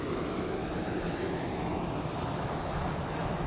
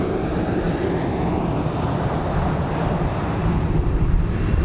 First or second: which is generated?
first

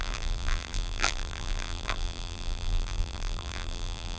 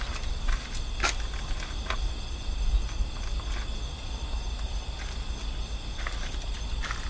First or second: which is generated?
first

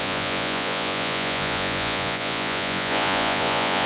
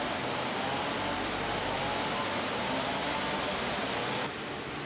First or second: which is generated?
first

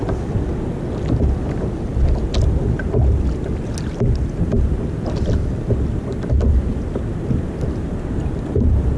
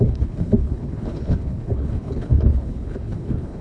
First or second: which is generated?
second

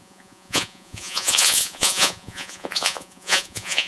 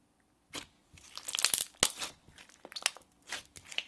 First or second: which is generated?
first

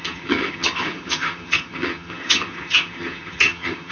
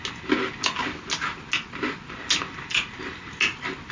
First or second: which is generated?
first